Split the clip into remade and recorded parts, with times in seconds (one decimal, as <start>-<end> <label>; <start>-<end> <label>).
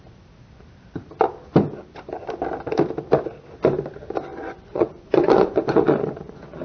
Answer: 0.0-4.3 recorded; 4.3-6.6 remade